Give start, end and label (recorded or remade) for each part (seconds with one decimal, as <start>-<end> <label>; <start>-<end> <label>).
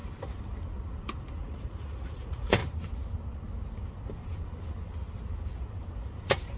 0.0-1.4 recorded; 1.4-2.6 remade; 2.6-6.6 recorded